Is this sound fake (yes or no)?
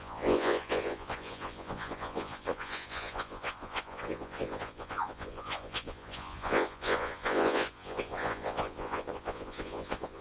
yes